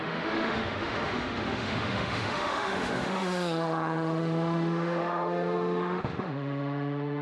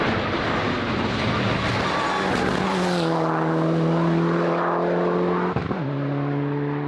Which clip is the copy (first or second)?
first